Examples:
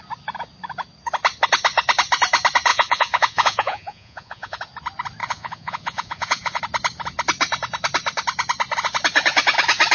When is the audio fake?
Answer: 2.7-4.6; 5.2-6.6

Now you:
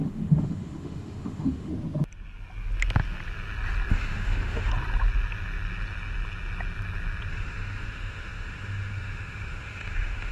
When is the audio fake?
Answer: 0.0-1.7; 3.9-4.7; 7.3-10.3

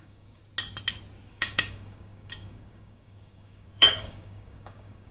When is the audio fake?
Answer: 0.0-0.4; 1.3-5.1

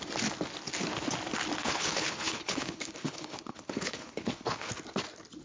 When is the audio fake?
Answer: 1.6-4.7

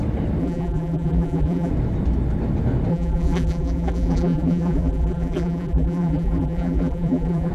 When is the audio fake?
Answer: 0.4-1.7; 2.9-7.5

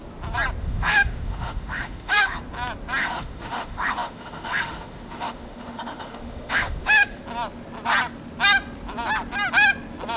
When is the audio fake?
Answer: 0.6-2.4; 3.0-7.2

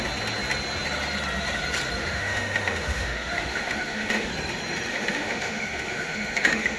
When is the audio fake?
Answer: 2.0-4.3; 4.9-6.8